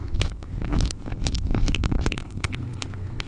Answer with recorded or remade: remade